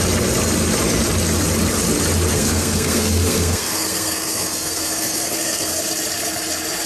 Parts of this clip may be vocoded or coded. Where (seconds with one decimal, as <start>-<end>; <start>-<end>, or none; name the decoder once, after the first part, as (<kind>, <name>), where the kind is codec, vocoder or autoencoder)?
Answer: 2.3-5.8 (codec, SNAC)